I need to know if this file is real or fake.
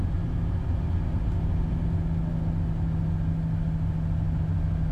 real